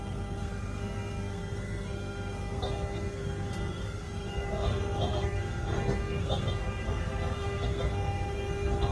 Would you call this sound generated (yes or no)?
yes